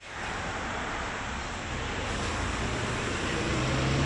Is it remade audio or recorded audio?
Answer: recorded